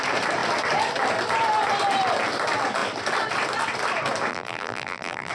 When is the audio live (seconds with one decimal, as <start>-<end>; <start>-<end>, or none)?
0.0-4.3